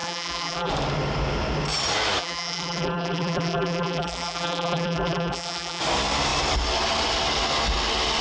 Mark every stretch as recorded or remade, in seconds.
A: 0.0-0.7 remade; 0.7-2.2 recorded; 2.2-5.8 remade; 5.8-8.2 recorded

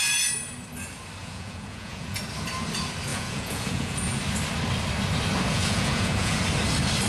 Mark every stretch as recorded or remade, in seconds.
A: 0.0-1.2 recorded; 1.2-2.2 remade; 2.2-3.1 recorded; 3.1-4.2 remade; 4.2-5.5 recorded; 5.5-6.4 remade; 6.4-7.1 recorded

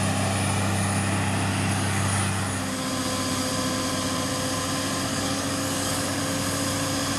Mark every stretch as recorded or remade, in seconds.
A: 0.0-1.5 recorded; 1.5-2.2 remade; 2.2-5.1 recorded; 5.1-6.2 remade; 6.2-7.2 recorded

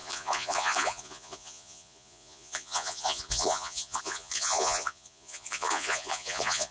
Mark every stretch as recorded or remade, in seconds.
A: 0.0-6.7 remade